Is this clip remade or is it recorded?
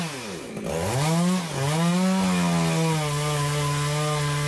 recorded